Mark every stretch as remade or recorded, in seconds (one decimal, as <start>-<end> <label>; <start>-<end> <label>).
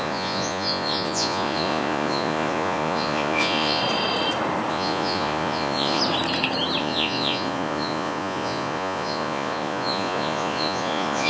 0.0-3.8 remade; 3.8-4.7 recorded; 4.7-6.0 remade; 6.0-6.8 recorded; 6.8-11.3 remade